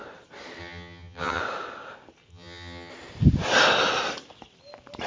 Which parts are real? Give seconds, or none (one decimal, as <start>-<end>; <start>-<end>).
0.0-0.6; 1.4-2.3; 2.9-5.1